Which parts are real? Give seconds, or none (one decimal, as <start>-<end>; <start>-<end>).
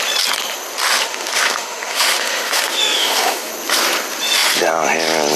0.0-0.9; 3.5-5.4